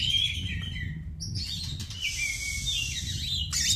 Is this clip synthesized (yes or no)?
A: no